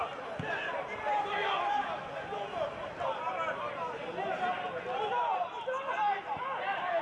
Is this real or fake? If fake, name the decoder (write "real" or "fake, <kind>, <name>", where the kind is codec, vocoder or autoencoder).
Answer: real